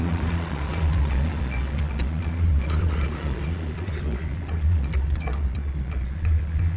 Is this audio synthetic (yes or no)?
yes